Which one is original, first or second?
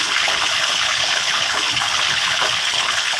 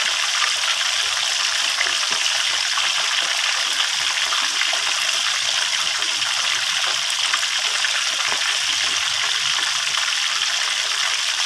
second